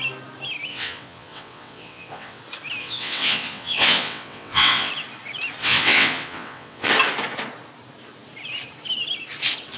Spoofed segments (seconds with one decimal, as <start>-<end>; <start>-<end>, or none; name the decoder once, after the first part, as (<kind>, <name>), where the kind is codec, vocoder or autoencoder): 0.7-2.4 (vocoder, WaveNeXt); 2.8-4.9; 5.6-6.9